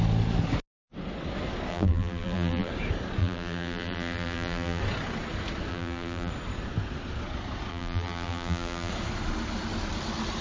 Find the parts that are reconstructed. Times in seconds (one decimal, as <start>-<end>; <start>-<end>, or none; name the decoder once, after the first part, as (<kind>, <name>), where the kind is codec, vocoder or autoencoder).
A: 1.7-2.7 (vocoder, BigVGAN v2); 3.2-4.8; 5.7-6.3; 7.7-8.9